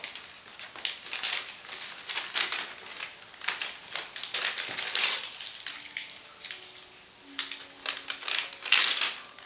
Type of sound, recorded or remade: recorded